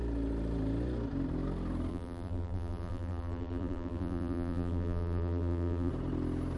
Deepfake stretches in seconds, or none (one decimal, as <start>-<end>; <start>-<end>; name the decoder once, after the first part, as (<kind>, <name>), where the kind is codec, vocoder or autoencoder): 1.9-5.9 (vocoder, BigVGAN v2)